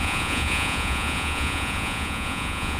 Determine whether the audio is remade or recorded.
remade